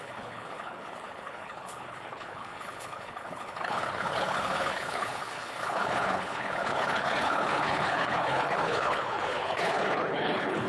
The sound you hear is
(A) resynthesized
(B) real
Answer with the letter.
A